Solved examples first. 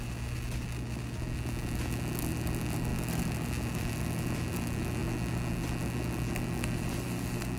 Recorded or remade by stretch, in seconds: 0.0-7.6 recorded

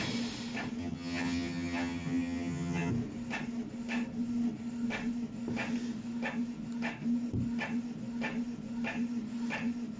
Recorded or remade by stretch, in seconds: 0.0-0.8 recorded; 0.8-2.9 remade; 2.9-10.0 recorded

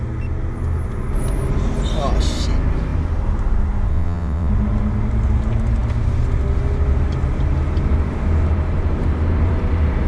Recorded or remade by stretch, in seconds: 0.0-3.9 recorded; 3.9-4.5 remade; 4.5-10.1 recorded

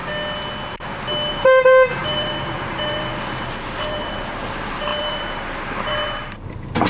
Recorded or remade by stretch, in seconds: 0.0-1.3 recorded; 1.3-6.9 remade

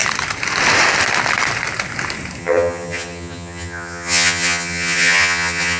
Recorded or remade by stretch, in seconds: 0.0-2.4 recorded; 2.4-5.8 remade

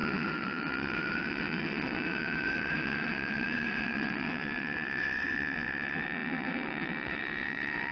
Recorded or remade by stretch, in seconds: 0.0-7.9 remade

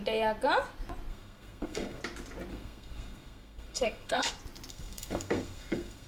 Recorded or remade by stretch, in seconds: 0.0-1.1 recorded; 1.1-2.0 remade; 2.0-2.5 recorded; 2.5-4.3 remade; 4.3-4.7 recorded; 4.7-6.1 remade